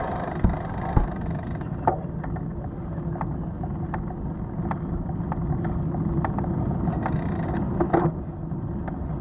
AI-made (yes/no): no